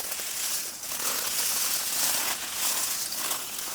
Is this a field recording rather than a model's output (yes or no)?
no